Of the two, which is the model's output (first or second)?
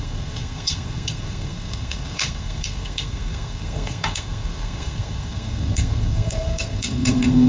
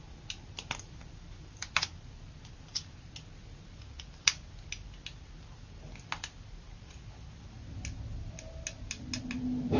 first